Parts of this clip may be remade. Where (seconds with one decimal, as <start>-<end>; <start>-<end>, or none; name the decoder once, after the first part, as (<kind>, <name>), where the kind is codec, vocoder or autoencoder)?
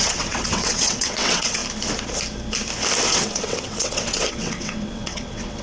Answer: 0.0-1.6 (vocoder, WaveNeXt); 3.1-5.6